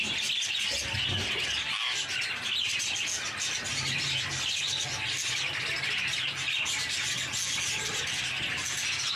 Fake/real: real